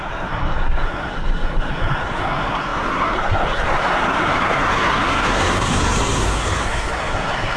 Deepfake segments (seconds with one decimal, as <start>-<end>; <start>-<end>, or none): 0.0-7.6